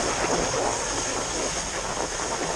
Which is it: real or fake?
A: real